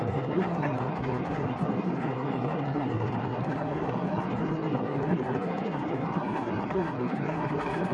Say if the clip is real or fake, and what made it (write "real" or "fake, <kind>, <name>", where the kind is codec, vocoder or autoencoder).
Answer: fake, codec, SNAC